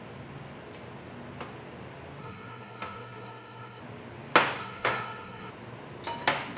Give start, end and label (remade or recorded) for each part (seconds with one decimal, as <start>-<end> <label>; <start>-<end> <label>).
0.0-2.2 recorded; 2.2-3.8 remade; 3.8-4.6 recorded; 4.6-5.5 remade; 5.5-6.6 recorded